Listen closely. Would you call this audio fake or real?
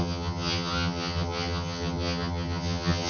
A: fake